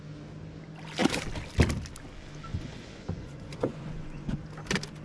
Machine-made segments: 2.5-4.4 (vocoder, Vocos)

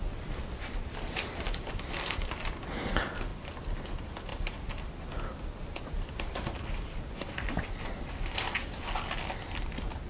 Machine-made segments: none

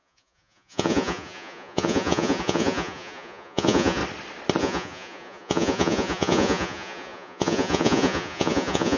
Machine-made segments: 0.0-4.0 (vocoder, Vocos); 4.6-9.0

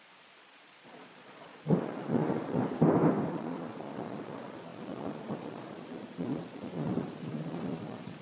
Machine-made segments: 0.0-2.6 (vocoder, Vocos); 3.3-8.2

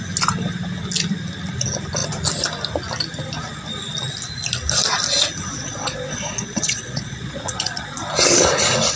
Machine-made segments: 5.5-8.1 (vocoder, Vocos)

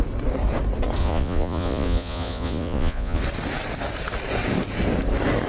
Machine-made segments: 1.0-3.2 (vocoder, Vocos)